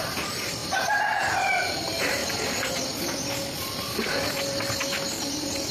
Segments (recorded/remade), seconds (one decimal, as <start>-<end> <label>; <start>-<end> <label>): 0.0-2.2 remade; 2.2-5.7 recorded